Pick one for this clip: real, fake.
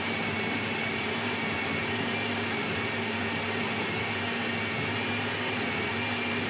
fake